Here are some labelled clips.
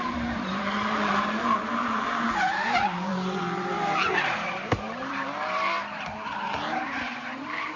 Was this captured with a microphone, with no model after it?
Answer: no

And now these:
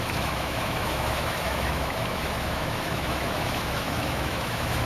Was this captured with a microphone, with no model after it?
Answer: no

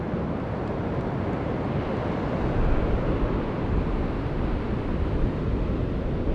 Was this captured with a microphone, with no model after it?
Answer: yes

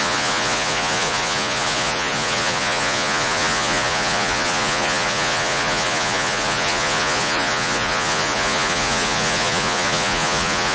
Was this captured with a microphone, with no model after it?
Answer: no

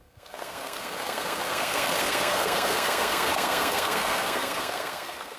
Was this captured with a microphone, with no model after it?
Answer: no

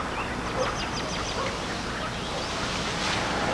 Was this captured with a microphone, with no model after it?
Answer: yes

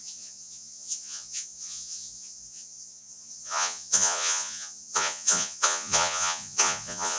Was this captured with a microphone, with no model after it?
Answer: no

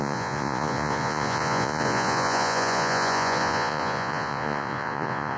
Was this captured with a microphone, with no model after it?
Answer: no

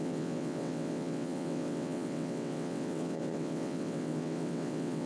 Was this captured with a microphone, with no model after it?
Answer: no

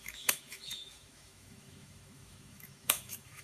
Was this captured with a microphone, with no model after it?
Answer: no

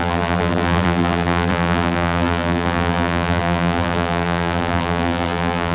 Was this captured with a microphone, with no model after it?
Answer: no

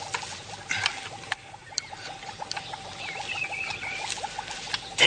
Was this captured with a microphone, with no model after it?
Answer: yes